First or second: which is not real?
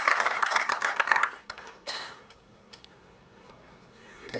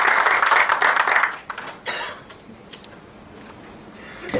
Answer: first